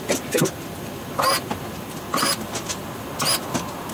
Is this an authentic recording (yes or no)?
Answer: yes